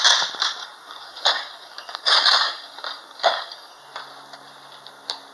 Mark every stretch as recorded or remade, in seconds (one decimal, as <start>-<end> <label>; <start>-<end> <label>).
0.0-0.6 recorded; 0.6-3.8 remade; 3.8-5.3 recorded